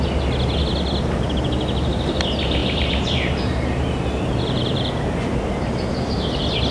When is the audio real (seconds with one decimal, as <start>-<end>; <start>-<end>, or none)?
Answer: 0.0-2.6; 5.2-6.7